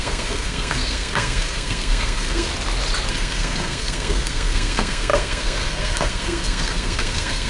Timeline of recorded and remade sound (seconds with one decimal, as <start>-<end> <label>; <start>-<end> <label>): 0.0-2.5 remade; 2.5-3.1 recorded; 3.1-7.5 remade